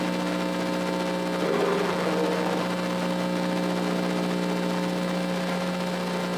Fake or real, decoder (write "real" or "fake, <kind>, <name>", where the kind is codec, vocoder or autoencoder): real